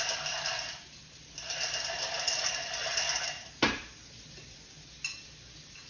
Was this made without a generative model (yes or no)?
yes